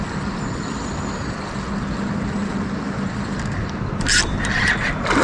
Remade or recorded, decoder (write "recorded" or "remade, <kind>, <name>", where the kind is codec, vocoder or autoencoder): recorded